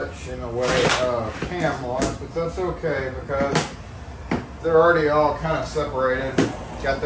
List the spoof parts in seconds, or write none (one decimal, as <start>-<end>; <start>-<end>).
none